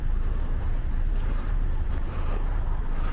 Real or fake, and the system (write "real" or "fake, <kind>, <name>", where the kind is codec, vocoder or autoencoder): fake, vocoder, BigVGAN v2